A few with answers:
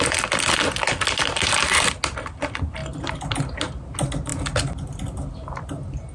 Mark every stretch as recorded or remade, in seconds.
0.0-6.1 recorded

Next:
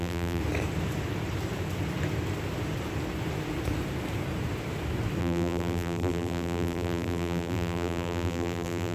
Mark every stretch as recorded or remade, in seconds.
0.0-0.4 remade; 0.4-5.2 recorded; 5.2-8.9 remade

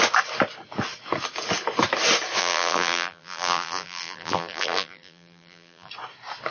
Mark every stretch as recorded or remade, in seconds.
0.0-2.4 recorded; 2.4-5.9 remade; 5.9-6.5 recorded

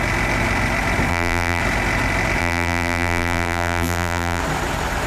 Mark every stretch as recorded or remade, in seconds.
0.0-1.1 recorded; 1.1-1.6 remade; 1.6-2.4 recorded; 2.4-4.4 remade; 4.4-5.1 recorded

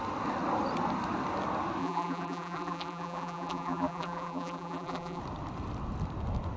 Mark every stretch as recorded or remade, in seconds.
0.0-1.8 recorded; 1.8-5.2 remade; 5.2-6.6 recorded

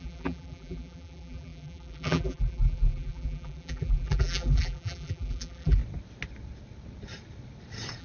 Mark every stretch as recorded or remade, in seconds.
0.0-5.8 remade; 5.8-8.0 recorded